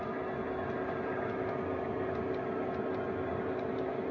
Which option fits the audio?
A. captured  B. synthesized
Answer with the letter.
A